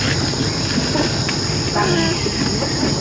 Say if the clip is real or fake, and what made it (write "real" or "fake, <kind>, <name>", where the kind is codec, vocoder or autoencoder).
real